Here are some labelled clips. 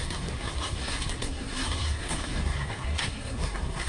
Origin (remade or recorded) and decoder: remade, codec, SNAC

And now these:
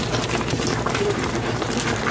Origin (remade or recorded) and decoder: remade, vocoder, BigVGAN v2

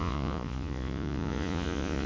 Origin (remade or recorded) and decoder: remade, vocoder, Vocos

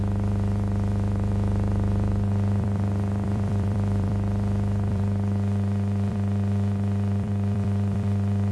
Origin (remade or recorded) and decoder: remade, vocoder, BigVGAN v2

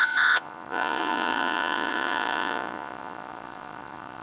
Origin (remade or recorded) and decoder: remade, vocoder, Vocos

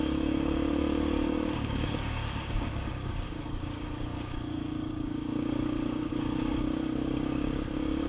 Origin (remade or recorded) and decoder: remade, codec, DAC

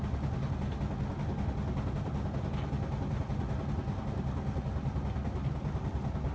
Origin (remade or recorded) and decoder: recorded